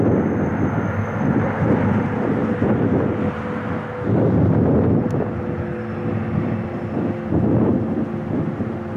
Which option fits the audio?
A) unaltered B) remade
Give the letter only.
A